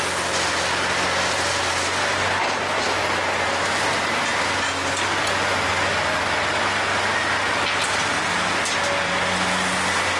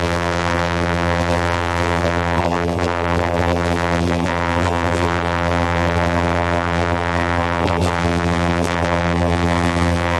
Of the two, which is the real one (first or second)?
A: first